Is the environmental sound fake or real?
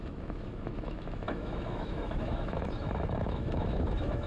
fake